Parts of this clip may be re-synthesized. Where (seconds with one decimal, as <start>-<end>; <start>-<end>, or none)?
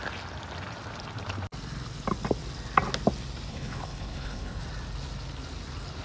3.5-4.6